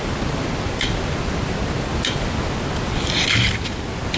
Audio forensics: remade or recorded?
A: recorded